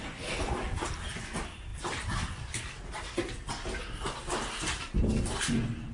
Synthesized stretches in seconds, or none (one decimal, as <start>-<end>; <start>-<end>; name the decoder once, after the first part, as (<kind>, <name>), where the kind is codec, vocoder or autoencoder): none